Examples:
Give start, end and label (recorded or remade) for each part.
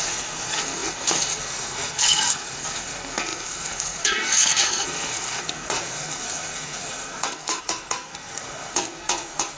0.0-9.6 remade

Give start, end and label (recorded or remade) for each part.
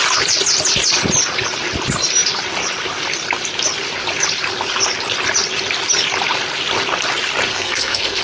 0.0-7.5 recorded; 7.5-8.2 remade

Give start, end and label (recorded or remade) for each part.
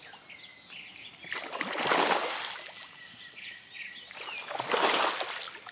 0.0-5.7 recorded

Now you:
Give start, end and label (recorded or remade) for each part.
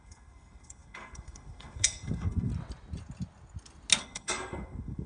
0.0-2.5 remade; 2.5-4.0 recorded; 4.0-5.1 remade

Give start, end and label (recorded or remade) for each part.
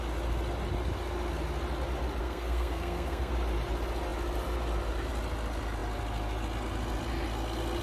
0.0-2.2 recorded; 2.2-3.3 remade; 3.3-7.8 recorded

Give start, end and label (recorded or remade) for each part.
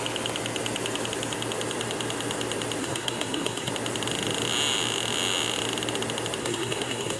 0.0-2.8 recorded; 2.8-3.7 remade; 3.7-6.4 recorded; 6.4-7.2 remade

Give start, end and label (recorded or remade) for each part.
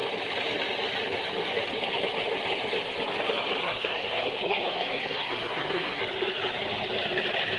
0.0-3.6 recorded; 3.6-6.0 remade; 6.0-7.6 recorded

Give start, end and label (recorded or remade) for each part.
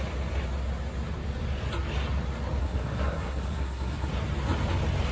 0.0-2.6 recorded; 2.6-4.1 remade; 4.1-5.1 recorded